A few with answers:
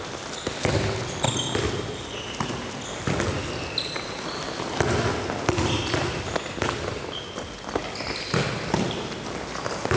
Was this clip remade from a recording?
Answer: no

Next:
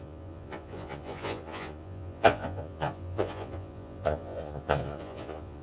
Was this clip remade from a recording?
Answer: yes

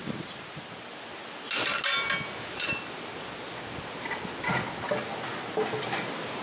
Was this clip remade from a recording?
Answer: no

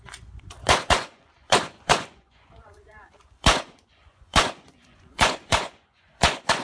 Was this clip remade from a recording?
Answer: yes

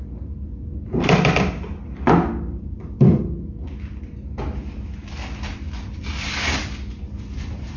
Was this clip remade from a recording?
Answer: no